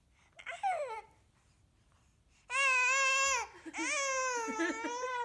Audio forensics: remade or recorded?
recorded